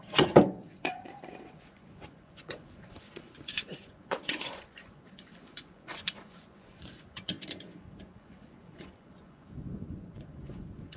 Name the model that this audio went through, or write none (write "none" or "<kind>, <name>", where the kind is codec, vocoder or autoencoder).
vocoder, Vocos